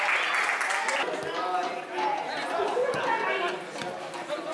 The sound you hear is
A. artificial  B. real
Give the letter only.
B